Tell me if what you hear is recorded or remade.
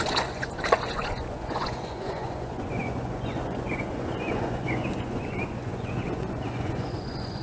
remade